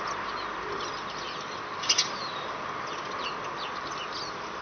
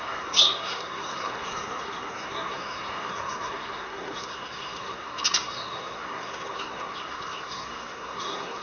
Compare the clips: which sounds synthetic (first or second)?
second